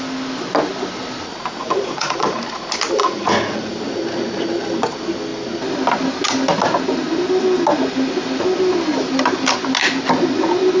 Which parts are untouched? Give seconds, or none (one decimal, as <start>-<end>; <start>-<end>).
0.0-1.6; 2.4-3.0; 3.7-10.8